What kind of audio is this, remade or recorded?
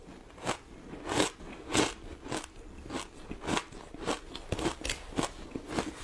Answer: recorded